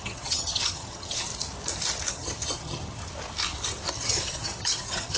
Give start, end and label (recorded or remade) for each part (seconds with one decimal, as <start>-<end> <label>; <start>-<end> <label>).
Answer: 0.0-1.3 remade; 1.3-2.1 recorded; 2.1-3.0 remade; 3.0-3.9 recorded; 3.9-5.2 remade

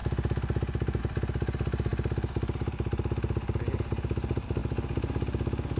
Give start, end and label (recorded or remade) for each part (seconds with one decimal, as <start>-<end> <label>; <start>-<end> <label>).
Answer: 0.0-5.8 recorded

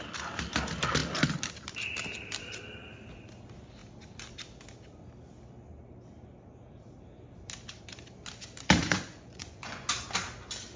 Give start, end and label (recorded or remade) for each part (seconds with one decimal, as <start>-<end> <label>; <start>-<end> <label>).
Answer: 0.0-8.8 recorded; 8.8-9.9 remade; 9.9-10.8 recorded